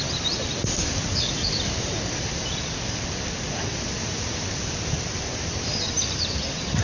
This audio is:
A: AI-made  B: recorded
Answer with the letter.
A